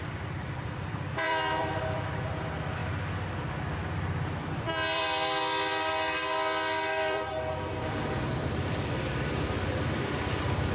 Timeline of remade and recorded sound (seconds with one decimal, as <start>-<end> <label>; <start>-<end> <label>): 0.0-2.8 remade; 2.8-4.5 recorded; 4.5-10.7 remade